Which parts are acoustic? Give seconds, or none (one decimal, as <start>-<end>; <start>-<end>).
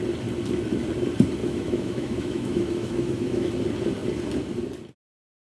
0.0-1.4; 3.5-5.4